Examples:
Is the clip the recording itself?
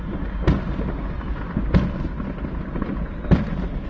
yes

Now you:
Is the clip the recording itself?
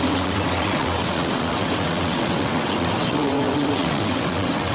no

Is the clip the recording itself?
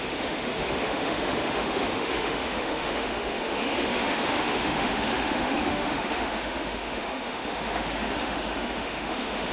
no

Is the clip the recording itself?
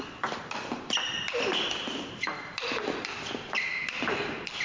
no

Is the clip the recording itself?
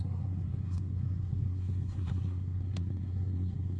no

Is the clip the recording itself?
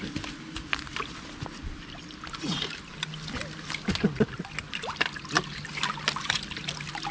yes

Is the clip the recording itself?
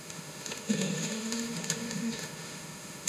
no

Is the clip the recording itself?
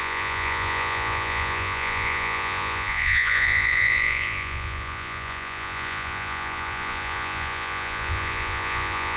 no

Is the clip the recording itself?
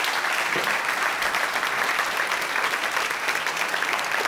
no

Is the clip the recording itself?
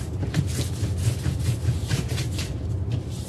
yes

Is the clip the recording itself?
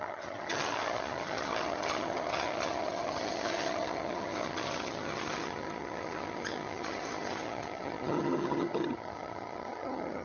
no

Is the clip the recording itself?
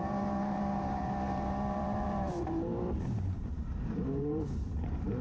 no